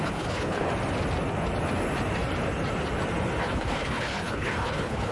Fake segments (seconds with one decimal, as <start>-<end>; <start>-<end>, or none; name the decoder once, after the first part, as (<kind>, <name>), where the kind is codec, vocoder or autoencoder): 0.0-0.7 (codec, HILCodec); 3.4-5.1